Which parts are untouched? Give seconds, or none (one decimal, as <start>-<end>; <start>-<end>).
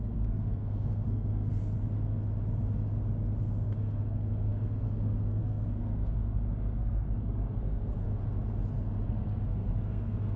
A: 1.6-3.4; 8.1-9.1